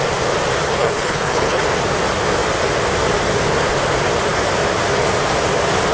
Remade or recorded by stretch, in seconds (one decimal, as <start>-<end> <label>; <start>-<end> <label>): 0.0-0.8 recorded; 0.8-1.6 remade; 1.6-5.9 recorded